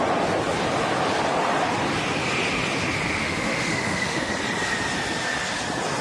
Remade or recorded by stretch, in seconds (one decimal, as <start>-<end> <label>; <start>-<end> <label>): 0.0-3.2 recorded; 3.2-4.3 remade; 4.3-6.0 recorded